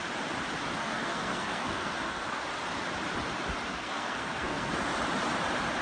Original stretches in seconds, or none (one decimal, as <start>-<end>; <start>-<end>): 0.0-0.8; 2.4-3.7; 4.7-5.8